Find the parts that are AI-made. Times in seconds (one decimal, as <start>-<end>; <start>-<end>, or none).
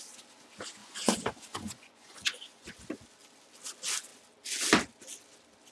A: 0.8-2.7